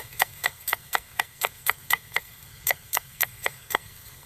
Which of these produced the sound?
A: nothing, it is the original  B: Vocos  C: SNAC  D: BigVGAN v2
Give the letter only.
C